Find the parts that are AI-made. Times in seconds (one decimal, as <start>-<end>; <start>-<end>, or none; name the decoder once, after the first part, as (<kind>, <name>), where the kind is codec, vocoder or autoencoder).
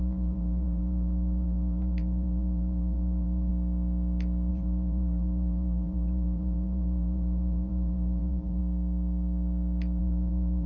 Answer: 0.0-3.5 (vocoder, BigVGAN v2); 4.5-8.6; 10.0-10.7